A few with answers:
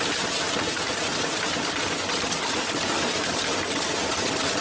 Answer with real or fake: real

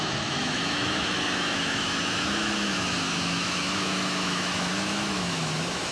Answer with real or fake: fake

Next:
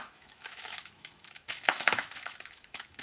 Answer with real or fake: fake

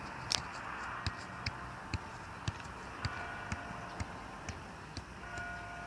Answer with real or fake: real